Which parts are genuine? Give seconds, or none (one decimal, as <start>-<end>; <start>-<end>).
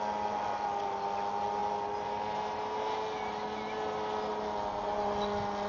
0.0-5.7